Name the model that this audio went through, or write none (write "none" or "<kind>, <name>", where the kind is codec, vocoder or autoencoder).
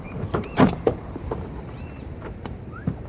vocoder, BigVGAN v2